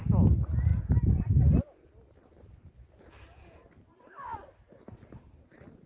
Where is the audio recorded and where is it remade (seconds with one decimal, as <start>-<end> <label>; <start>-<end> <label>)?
0.0-5.9 recorded